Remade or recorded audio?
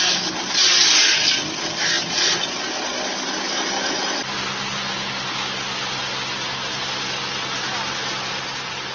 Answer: recorded